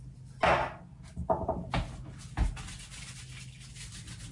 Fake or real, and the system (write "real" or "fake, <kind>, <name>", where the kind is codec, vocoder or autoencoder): real